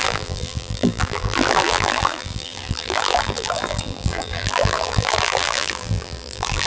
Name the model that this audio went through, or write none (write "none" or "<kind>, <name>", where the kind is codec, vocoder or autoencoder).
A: vocoder, BigVGAN v2